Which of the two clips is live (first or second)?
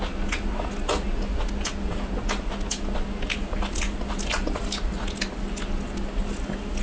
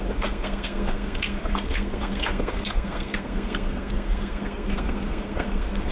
first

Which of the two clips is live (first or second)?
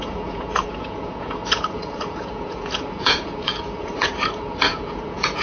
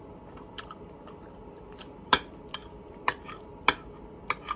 second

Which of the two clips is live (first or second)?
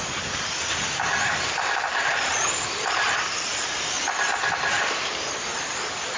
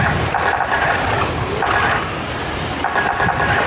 second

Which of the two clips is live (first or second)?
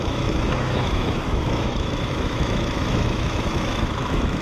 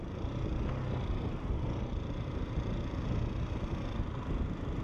second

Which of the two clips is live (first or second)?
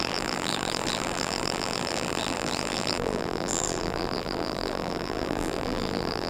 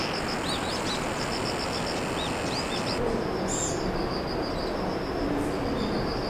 second